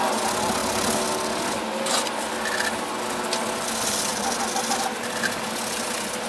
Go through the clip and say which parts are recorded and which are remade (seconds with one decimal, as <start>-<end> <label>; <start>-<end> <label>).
0.0-4.1 recorded; 4.1-5.2 remade; 5.2-6.3 recorded